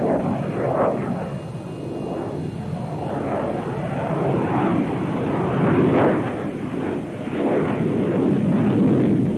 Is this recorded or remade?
recorded